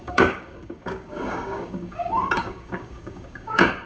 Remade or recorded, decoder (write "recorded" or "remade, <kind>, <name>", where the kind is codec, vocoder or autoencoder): remade, codec, DAC